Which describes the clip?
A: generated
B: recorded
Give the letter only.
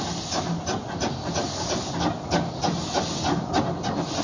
B